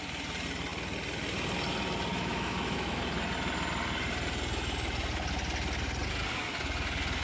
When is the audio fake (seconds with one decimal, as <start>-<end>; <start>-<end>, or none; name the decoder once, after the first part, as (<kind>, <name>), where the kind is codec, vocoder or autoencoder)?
2.1-3.0 (autoencoder, DAC-VAE)